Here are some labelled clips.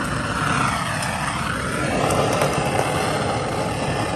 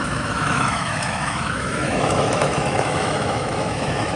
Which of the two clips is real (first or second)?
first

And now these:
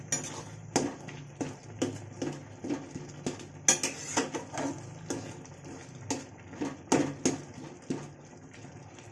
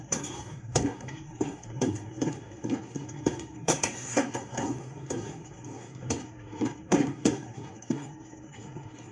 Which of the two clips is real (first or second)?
first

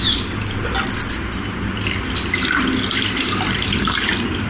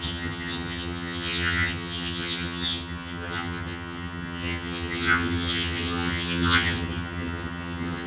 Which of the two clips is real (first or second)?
first